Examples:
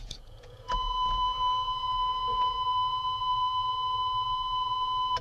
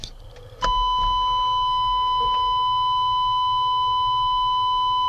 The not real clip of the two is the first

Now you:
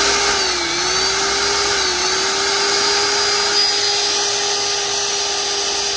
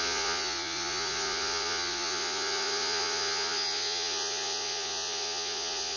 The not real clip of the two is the second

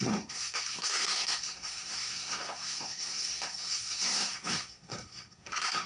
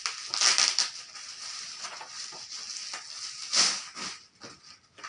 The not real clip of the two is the first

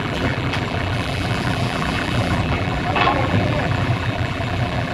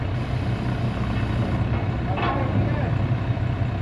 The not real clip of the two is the first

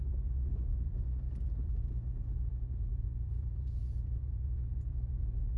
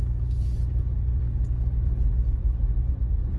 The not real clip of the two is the first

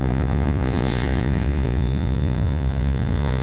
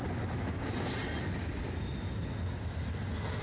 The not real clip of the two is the first